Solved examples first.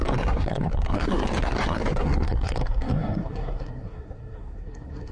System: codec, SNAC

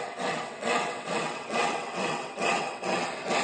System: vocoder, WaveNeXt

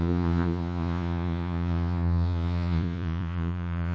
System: vocoder, Vocos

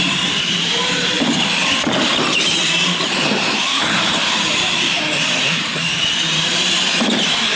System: vocoder, BigVGAN v2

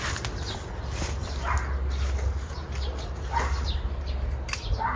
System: none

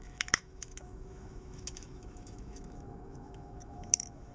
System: autoencoder, DAC-VAE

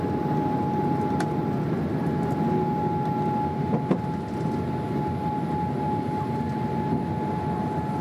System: none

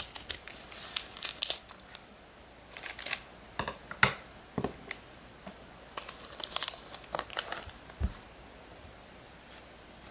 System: none